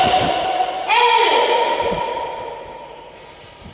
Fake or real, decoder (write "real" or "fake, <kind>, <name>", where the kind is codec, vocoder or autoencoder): fake, vocoder, BigVGAN v2